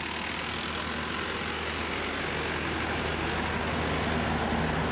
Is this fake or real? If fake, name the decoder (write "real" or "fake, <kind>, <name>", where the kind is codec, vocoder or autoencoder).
real